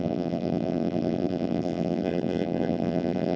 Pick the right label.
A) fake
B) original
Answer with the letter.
A